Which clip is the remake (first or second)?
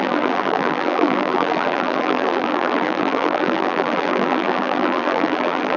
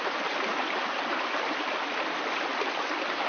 first